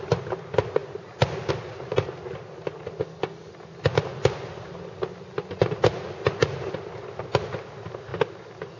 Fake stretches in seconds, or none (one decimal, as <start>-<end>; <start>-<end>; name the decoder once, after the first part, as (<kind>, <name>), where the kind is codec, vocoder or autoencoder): none